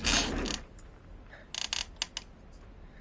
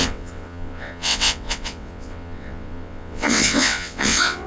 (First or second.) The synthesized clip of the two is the second